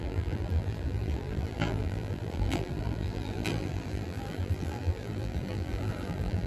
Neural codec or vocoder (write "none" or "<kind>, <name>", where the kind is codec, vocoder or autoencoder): vocoder, BigVGAN v2